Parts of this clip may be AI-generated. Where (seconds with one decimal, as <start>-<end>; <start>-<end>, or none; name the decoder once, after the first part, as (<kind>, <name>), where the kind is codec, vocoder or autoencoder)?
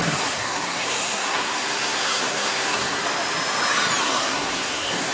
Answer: 0.0-3.0 (codec, SNAC); 4.0-5.1